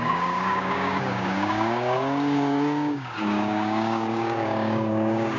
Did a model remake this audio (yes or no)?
yes